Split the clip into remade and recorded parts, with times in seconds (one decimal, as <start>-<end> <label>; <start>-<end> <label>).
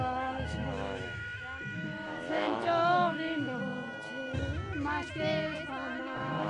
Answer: 0.0-3.6 remade; 3.6-6.0 recorded; 6.0-6.5 remade